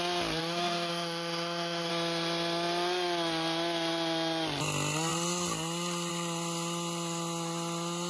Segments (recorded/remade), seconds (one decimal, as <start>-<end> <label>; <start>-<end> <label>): 0.0-0.4 recorded; 0.4-1.9 remade; 1.9-8.1 recorded